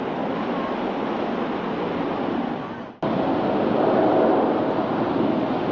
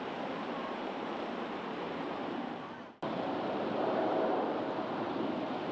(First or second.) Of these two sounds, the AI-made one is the second